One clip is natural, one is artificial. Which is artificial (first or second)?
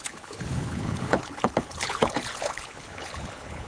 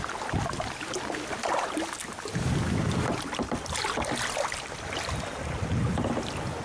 first